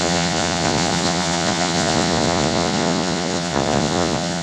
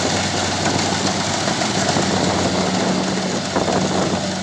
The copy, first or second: first